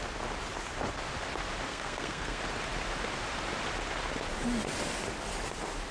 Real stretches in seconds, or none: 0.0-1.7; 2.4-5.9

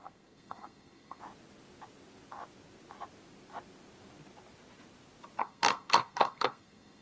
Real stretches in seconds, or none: 1.2-5.4

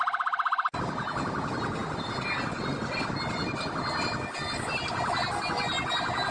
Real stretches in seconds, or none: 0.0-6.3

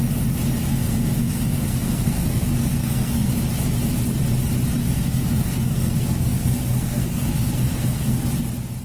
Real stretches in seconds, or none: 0.0-0.7; 3.3-4.8; 8.2-8.8